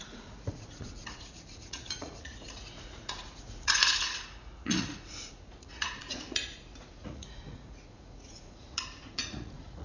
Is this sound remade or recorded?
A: remade